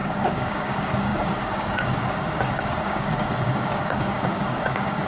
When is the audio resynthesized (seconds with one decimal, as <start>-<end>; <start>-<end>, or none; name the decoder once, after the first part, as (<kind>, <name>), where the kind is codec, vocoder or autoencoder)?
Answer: 0.0-5.1 (codec, DAC)